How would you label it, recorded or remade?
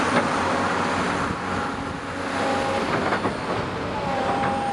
recorded